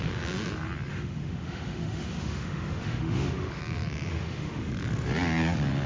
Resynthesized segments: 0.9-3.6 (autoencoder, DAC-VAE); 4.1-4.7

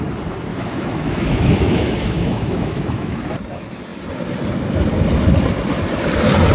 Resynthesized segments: 0.5-3.2 (autoencoder, DAC-VAE)

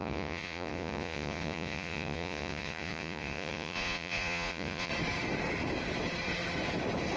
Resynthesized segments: 0.0-4.9 (vocoder, Vocos)

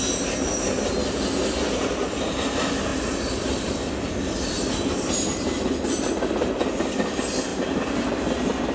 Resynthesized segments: 2.9-3.9 (vocoder, BigVGAN v2)

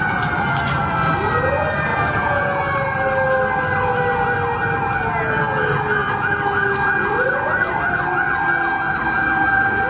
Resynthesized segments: 1.9-2.6 (vocoder, Vocos)

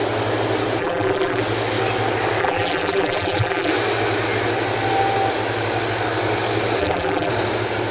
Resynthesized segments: 0.8-1.4 (vocoder, BigVGAN v2); 2.4-3.7; 6.8-7.3

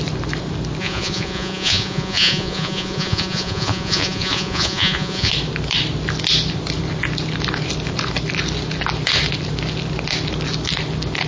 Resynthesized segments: 0.8-5.3 (vocoder, Vocos)

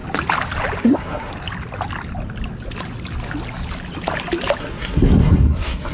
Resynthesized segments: 0.8-1.3 (codec, SNAC); 4.6-5.9